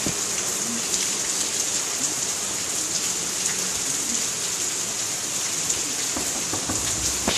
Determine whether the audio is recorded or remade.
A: recorded